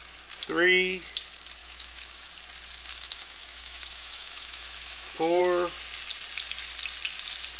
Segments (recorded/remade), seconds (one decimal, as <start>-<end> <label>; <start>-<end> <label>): 0.0-1.6 recorded; 1.6-2.3 remade; 2.3-2.9 recorded; 2.9-5.4 remade; 5.4-7.6 recorded